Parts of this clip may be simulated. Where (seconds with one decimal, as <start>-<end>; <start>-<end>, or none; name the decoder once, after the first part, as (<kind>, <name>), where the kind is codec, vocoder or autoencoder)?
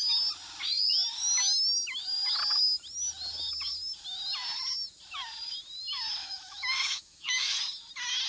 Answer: 6.2-7.6 (autoencoder, DAC-VAE)